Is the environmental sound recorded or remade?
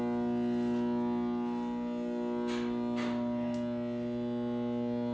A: recorded